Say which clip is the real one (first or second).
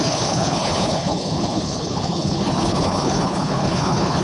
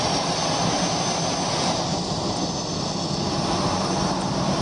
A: second